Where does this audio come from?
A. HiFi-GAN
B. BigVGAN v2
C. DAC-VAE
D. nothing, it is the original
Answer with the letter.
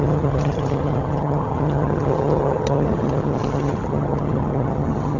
A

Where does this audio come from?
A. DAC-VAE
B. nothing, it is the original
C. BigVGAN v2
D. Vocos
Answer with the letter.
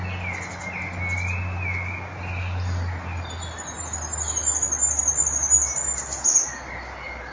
B